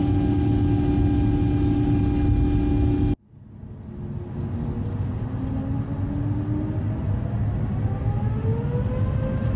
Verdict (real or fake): real